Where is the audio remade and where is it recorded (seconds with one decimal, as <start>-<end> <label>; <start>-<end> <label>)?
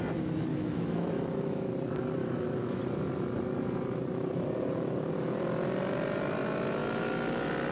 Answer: 0.0-0.5 recorded; 0.5-1.7 remade; 1.7-2.2 recorded; 2.2-2.8 remade; 2.8-7.7 recorded